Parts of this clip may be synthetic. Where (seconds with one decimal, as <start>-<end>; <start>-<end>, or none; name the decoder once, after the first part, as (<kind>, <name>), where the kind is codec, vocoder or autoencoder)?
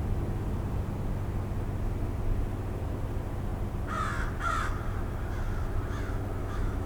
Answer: 6.4-6.9 (autoencoder, DAC-VAE)